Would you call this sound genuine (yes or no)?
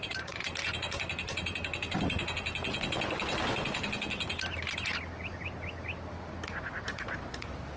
yes